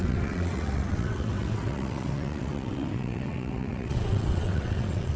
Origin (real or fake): fake